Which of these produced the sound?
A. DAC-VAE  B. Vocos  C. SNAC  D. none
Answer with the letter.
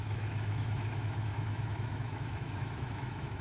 A